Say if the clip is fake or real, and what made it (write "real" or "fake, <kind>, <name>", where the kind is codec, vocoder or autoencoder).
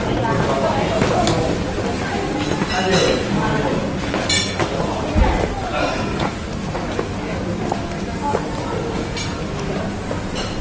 real